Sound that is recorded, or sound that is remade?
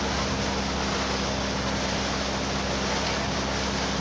recorded